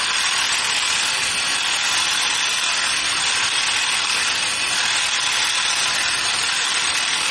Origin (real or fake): real